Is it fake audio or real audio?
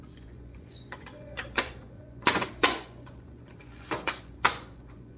fake